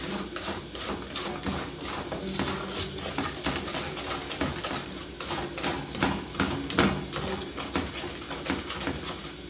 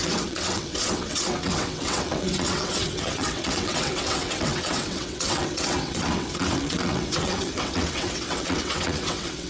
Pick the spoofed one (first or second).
second